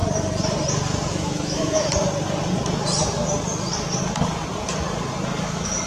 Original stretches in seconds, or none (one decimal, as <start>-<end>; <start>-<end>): 0.0-1.1; 1.9-5.4